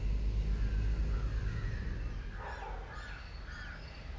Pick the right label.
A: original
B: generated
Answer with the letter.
A